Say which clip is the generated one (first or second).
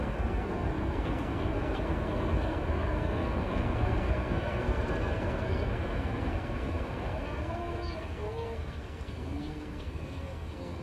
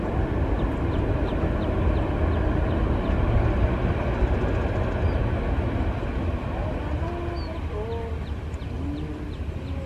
first